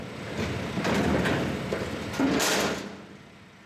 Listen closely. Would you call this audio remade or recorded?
recorded